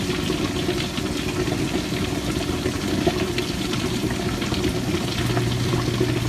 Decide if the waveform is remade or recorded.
recorded